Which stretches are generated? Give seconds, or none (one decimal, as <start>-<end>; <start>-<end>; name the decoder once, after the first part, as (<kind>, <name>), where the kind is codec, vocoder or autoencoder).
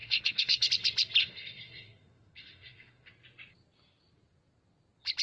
0.0-0.7 (codec, SNAC); 1.2-3.1